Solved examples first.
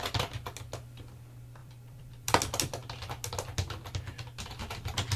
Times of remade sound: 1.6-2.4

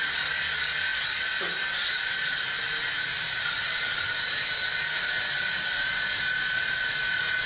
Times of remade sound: none

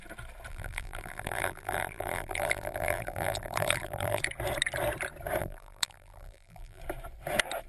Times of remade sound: 0.5-4.2; 5.4-6.8

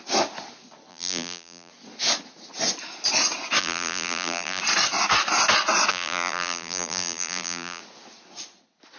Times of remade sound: 0.9-1.7; 3.6-4.6; 5.9-7.8

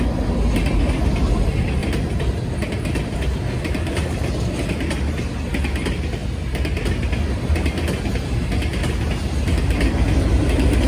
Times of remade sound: 1.8-4.3

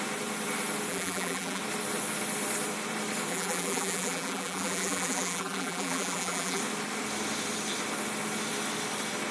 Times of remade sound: 0.9-1.6; 3.3-6.6

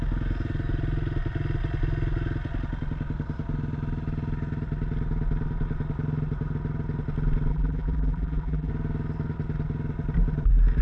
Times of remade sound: 7.5-8.7